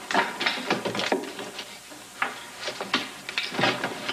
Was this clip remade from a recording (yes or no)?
no